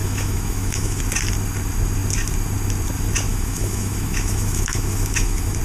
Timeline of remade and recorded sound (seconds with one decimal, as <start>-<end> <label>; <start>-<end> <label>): 0.0-1.0 remade; 1.0-3.3 recorded; 3.3-5.6 remade